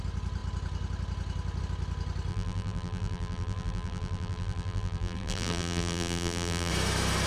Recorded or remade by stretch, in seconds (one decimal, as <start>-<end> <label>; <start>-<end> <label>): 0.0-2.3 recorded; 2.3-6.7 remade; 6.7-7.3 recorded